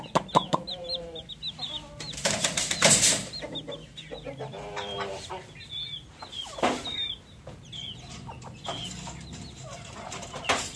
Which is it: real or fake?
real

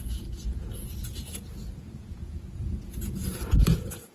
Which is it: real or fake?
fake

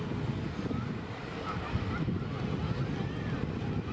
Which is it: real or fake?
real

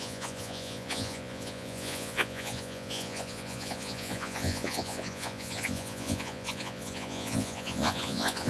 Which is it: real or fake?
fake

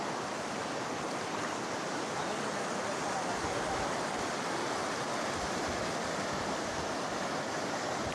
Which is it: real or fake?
real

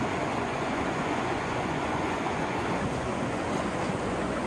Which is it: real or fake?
fake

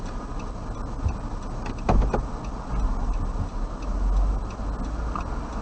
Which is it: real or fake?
real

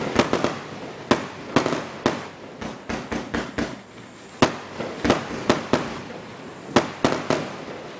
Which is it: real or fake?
real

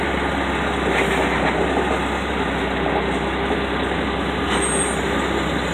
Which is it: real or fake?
real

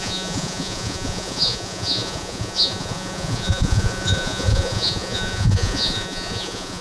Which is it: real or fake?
fake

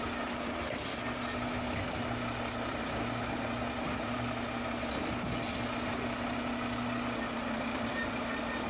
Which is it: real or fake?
real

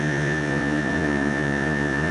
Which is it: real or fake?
fake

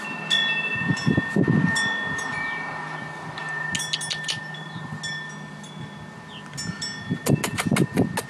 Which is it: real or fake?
real